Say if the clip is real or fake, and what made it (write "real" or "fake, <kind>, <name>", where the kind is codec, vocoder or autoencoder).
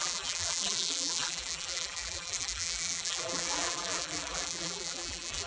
fake, vocoder, BigVGAN v2